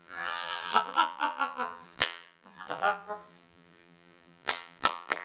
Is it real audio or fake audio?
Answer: fake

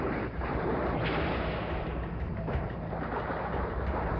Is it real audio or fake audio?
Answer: fake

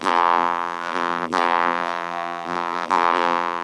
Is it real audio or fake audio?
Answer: fake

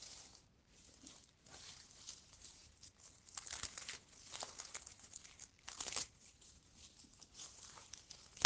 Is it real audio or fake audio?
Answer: fake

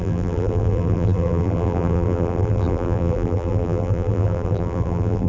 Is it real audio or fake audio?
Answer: fake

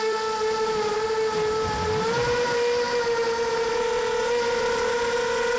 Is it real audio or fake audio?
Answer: fake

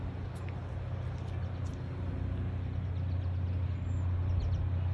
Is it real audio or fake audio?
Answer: real